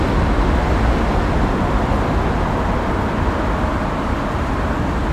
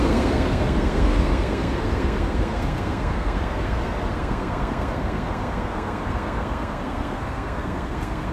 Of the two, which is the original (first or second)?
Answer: first